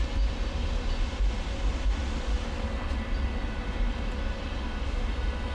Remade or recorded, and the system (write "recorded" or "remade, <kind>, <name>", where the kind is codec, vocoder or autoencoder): recorded